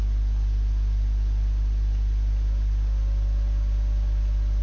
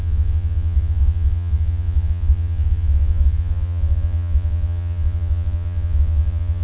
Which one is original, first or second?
first